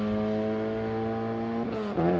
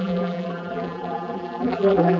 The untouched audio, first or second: first